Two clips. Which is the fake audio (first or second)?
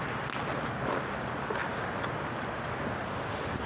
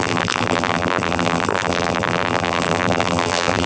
second